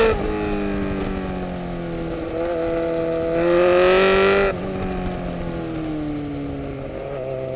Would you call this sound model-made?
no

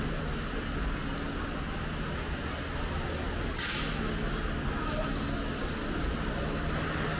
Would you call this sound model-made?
no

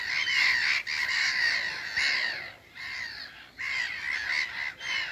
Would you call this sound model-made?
no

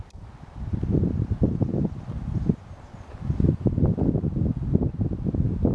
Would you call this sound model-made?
no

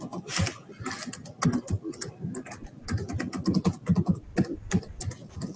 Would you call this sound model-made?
no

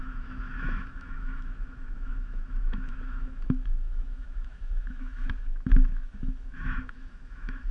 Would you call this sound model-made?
yes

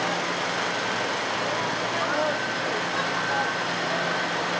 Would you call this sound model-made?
no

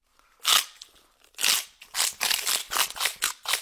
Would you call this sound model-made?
no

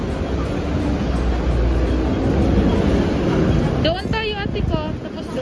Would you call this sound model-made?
no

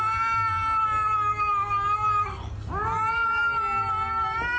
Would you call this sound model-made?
no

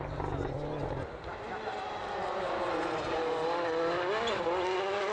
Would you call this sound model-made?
no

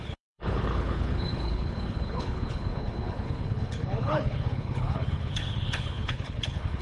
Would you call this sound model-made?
yes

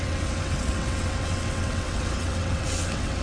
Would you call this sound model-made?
yes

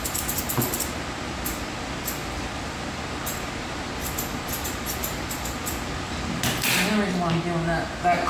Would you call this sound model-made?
no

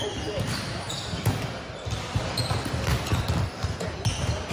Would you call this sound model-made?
yes